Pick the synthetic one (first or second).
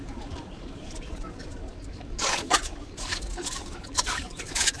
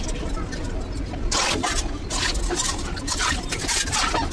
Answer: first